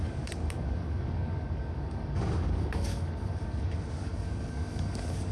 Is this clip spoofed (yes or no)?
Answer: yes